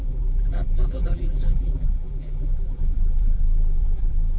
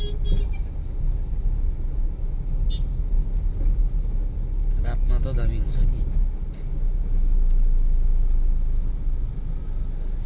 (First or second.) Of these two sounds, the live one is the second